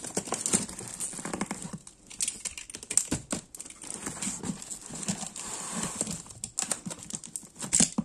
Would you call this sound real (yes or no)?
yes